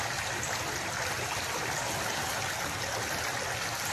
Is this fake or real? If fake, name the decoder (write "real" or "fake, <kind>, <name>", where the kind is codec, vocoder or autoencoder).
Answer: real